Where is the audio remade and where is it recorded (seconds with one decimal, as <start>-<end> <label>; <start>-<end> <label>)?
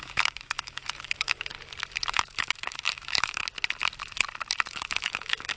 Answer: 0.0-1.5 remade; 1.5-2.1 recorded; 2.1-3.4 remade; 3.4-4.7 recorded; 4.7-5.6 remade